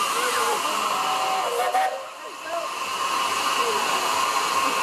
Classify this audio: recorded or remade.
recorded